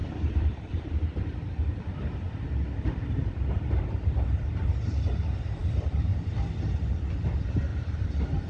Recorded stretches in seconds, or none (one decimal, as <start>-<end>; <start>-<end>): 4.5-5.6; 6.7-7.7